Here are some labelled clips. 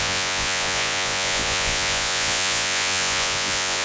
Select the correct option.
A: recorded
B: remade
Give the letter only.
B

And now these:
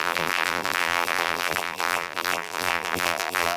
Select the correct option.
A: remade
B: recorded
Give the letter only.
A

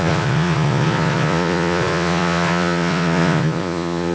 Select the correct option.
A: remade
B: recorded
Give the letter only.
A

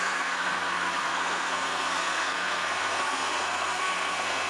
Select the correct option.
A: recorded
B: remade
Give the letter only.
B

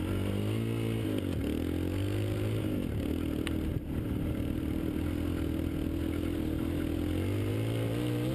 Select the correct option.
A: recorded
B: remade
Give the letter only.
A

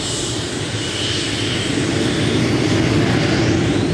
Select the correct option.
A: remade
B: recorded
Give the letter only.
B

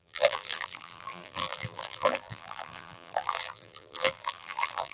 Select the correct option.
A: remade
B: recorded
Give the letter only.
A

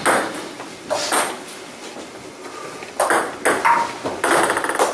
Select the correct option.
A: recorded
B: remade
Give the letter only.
A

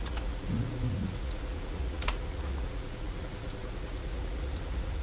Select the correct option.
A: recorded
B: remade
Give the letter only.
B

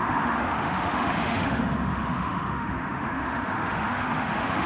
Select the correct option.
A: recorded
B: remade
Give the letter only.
B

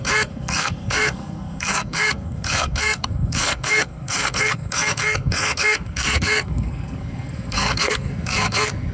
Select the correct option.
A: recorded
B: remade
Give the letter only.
B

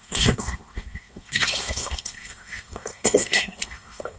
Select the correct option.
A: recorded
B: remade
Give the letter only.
B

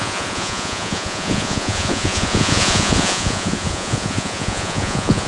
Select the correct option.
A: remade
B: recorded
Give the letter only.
A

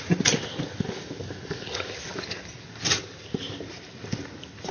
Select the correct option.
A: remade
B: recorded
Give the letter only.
B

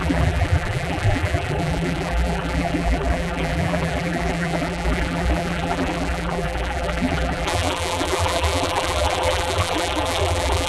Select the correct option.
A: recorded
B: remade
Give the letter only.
B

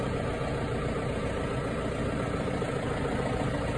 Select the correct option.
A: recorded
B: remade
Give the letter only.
A